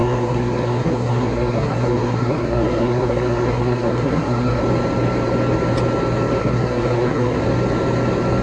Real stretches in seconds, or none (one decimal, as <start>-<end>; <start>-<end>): 4.6-6.4; 7.4-8.4